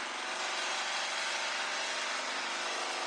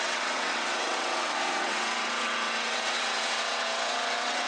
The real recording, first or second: first